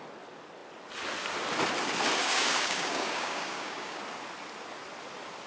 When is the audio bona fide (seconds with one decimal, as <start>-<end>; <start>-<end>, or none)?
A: 0.0-2.2; 4.0-5.5